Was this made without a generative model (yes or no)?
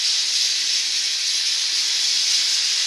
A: yes